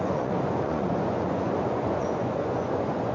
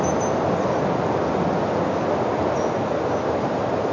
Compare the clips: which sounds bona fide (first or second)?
second